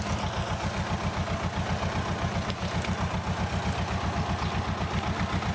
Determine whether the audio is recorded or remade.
recorded